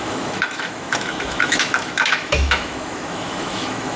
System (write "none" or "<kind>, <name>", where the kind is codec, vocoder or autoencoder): autoencoder, DAC-VAE